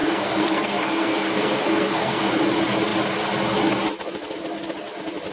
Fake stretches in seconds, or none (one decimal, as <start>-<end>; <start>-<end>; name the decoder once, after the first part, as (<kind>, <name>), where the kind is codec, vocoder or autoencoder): 0.0-2.3 (codec, SNAC)